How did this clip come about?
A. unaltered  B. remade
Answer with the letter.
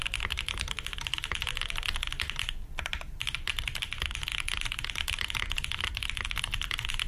A